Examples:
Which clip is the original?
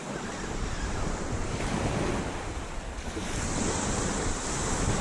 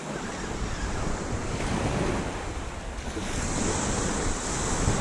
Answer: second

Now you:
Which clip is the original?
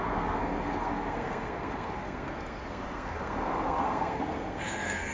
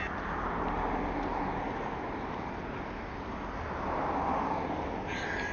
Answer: second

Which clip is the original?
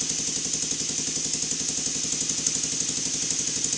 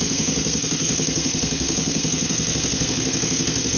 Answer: first